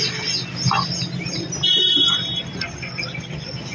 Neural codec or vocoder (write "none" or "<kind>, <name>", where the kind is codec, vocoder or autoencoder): none